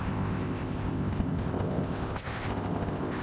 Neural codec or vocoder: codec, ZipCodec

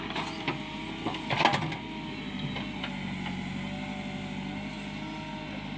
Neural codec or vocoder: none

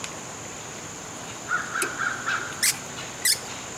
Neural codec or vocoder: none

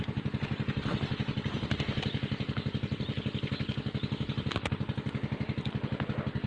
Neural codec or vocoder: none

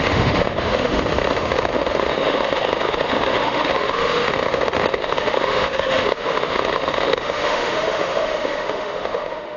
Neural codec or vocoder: autoencoder, DAC-VAE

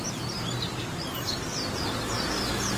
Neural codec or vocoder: none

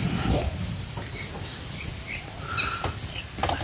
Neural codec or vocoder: none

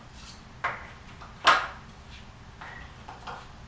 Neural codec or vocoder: none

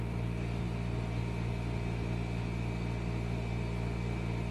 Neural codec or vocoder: none